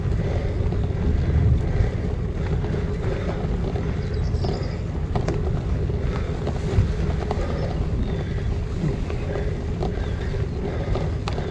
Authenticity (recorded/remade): recorded